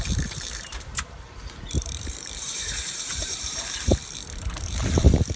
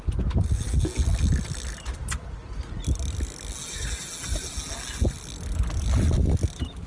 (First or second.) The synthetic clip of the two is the first